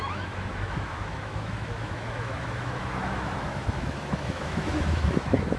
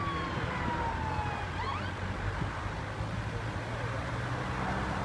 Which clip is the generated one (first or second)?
first